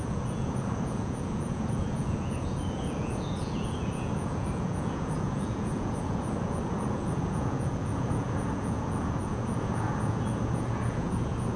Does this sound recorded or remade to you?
remade